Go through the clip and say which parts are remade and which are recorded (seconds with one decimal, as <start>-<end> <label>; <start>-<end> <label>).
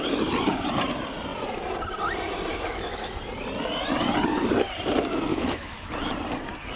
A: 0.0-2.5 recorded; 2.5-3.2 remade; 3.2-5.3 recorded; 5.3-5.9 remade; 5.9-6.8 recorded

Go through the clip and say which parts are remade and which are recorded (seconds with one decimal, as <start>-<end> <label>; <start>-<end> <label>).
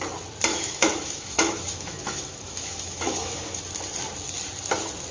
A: 0.0-0.5 recorded; 0.5-3.6 remade; 3.6-5.1 recorded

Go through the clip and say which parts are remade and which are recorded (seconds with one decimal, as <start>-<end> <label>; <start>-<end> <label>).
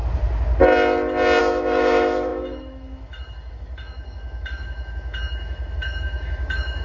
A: 0.0-1.4 recorded; 1.4-6.8 remade